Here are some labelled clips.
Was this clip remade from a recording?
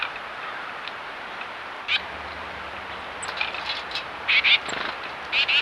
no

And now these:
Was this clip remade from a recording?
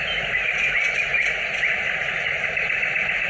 no